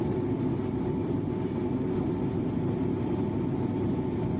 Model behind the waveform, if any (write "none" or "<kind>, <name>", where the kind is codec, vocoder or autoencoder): vocoder, BigVGAN v2